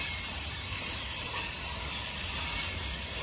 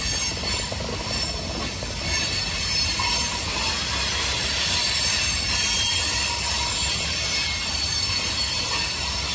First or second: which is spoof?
first